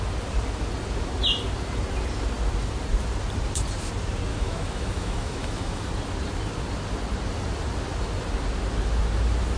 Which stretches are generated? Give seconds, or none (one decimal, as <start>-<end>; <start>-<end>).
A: 4.3-5.9